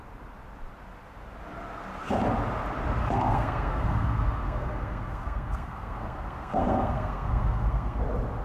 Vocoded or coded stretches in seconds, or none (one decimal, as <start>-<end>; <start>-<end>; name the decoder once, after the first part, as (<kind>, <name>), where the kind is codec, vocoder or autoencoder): 3.0-8.0 (codec, SNAC)